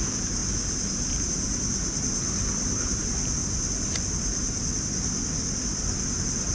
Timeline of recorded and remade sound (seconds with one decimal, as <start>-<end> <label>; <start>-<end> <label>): 0.0-6.5 remade